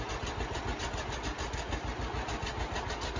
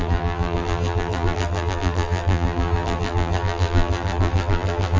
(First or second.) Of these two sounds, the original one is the first